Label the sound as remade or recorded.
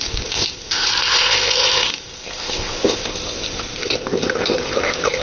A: remade